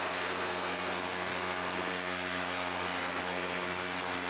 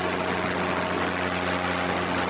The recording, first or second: second